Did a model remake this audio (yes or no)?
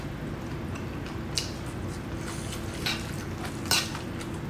no